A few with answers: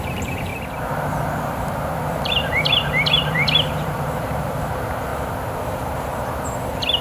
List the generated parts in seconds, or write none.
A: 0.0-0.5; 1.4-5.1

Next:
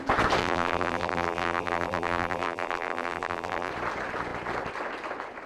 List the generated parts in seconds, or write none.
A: 0.4-3.7

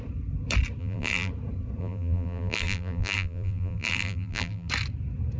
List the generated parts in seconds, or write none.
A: 0.8-1.3; 1.8-4.7

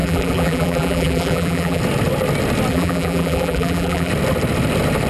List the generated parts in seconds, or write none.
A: 0.0-1.8; 2.7-4.1

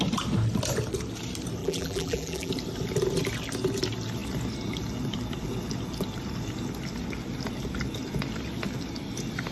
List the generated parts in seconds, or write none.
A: 1.6-2.5

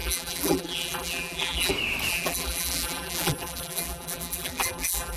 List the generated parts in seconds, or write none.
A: 0.0-1.7; 2.1-5.2